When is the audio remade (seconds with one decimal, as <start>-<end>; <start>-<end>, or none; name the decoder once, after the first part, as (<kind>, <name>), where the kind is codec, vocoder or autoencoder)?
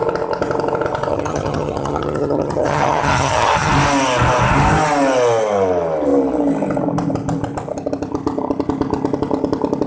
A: 1.1-3.7 (vocoder, HiFi-GAN)